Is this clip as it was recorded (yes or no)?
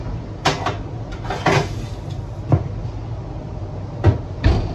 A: yes